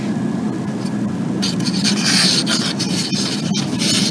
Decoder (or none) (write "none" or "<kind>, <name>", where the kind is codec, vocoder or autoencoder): none